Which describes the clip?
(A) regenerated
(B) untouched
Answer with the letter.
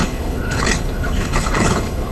A